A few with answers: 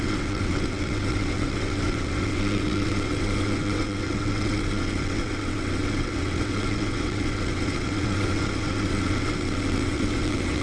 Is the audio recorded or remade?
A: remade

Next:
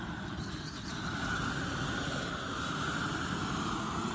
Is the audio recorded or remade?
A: recorded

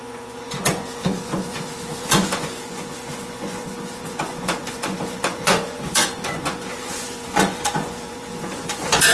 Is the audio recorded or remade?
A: remade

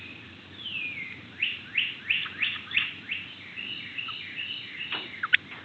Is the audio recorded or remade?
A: recorded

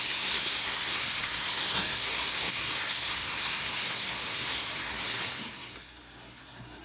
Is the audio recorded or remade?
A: remade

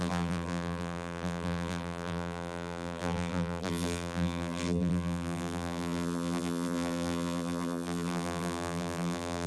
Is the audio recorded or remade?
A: remade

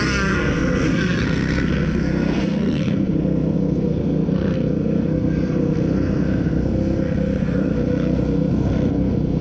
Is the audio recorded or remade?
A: remade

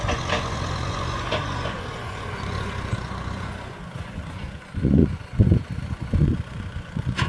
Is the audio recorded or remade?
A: remade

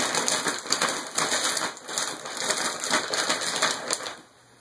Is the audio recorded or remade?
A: recorded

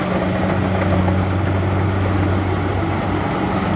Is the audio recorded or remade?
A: recorded